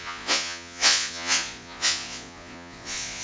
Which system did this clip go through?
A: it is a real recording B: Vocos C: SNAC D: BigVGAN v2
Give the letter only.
B